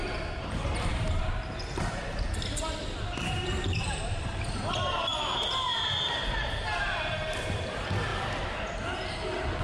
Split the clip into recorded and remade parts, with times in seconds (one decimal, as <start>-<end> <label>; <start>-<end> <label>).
0.0-8.1 remade; 8.1-9.6 recorded